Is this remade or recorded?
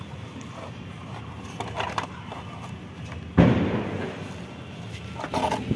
recorded